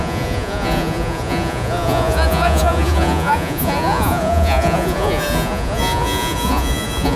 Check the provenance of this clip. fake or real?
fake